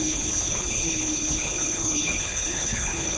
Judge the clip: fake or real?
fake